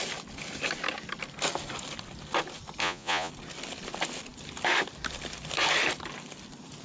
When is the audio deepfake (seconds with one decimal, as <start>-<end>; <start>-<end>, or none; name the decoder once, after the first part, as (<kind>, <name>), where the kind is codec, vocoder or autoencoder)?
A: 2.8-3.3 (vocoder, Vocos)